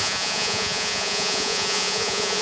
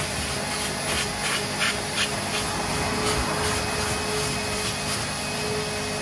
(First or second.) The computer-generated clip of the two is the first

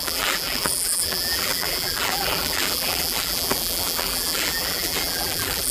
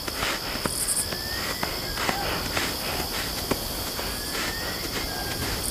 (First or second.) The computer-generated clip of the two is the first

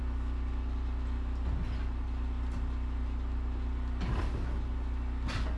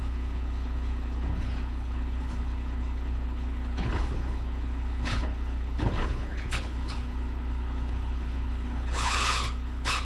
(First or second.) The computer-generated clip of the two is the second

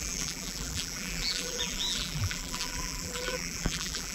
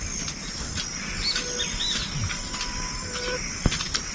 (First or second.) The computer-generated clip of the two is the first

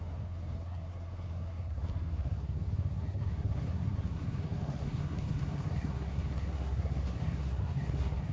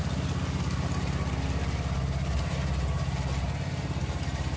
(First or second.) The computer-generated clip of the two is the first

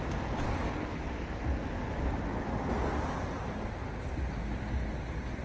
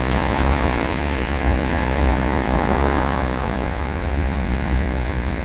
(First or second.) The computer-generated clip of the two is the second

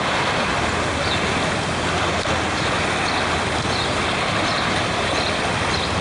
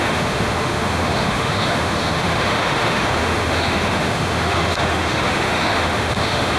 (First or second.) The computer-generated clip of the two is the second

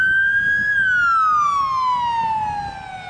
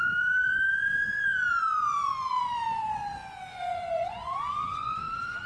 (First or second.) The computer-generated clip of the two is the second